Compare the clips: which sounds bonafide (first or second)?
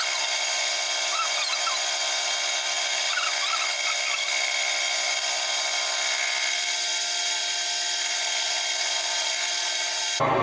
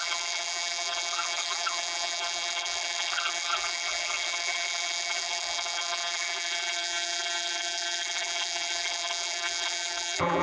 first